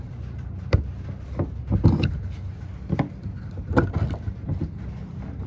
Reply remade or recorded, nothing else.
recorded